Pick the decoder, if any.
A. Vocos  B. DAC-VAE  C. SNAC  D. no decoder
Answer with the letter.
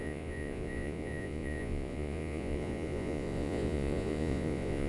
A